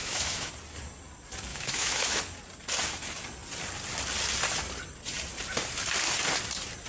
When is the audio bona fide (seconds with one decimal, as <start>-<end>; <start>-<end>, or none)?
0.5-1.5; 2.2-6.9